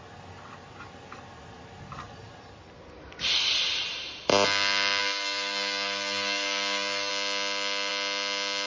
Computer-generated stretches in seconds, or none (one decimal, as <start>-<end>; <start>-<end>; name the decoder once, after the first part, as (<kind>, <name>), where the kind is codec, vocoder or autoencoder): 5.0-7.1 (codec, DAC)